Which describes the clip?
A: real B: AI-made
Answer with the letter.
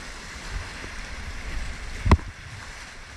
A